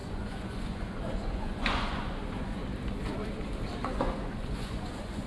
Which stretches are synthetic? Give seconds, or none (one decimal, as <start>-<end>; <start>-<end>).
0.0-2.6; 3.9-5.3